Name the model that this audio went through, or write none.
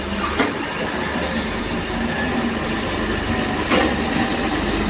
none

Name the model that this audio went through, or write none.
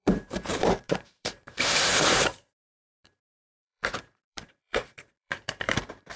vocoder, BigVGAN v2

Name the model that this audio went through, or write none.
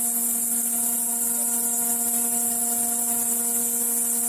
none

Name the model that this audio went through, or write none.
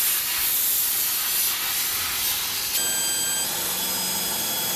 none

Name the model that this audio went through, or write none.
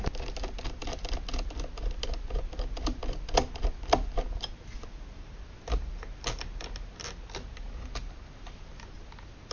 none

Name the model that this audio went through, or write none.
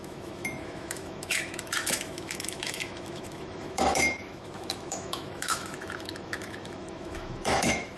autoencoder, DAC-VAE